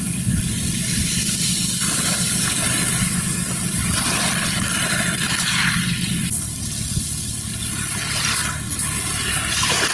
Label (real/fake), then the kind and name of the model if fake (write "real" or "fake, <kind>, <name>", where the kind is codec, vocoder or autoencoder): real